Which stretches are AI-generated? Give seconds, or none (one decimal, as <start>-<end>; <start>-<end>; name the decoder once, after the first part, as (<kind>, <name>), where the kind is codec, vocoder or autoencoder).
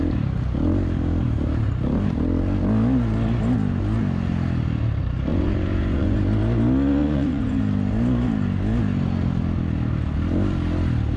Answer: 5.3-6.2 (vocoder, Vocos); 7.0-7.6